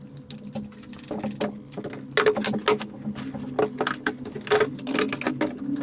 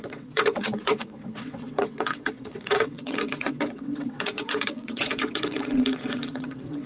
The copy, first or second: second